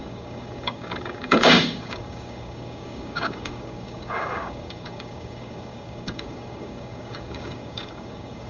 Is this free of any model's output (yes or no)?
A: no